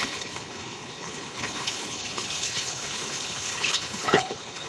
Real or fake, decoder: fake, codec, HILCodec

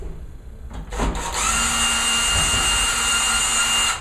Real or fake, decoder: real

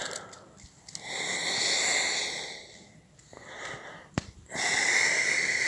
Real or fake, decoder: real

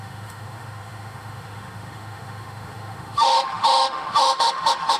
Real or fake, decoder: fake, autoencoder, DAC-VAE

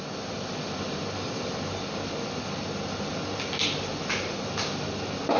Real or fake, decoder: real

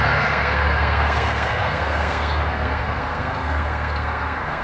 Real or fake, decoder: fake, codec, SNAC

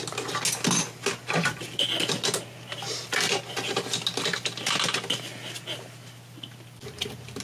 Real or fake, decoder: real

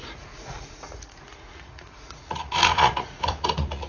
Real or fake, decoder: fake, vocoder, Vocos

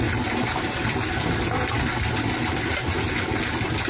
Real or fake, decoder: real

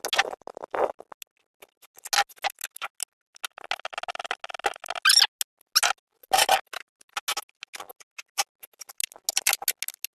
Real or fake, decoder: real